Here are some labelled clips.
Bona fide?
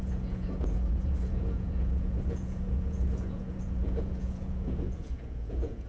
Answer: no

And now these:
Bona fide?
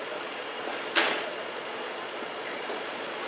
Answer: no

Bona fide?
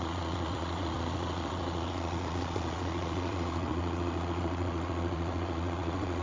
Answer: no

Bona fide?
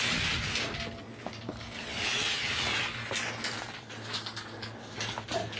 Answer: yes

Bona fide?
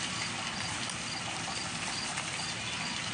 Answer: yes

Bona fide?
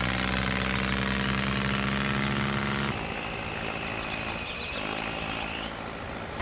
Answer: yes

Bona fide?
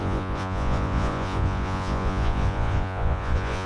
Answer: no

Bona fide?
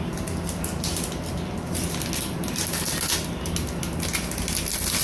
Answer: yes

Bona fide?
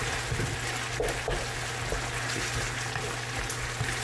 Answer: yes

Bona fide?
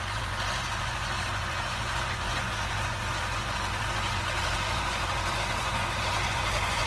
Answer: no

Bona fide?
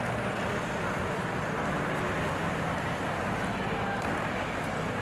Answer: yes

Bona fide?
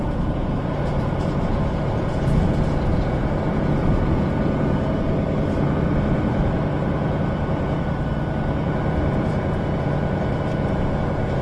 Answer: no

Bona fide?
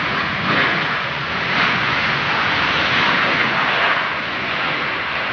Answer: no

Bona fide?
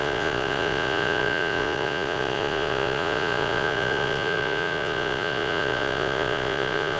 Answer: no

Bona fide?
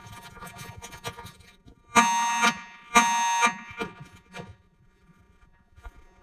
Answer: no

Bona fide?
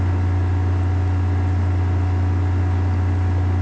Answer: yes